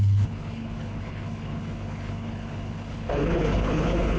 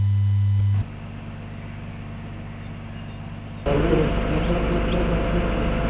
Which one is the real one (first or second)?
second